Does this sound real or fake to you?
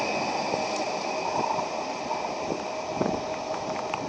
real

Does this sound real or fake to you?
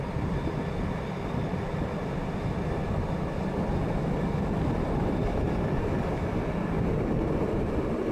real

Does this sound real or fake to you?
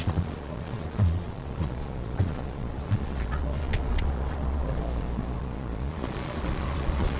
fake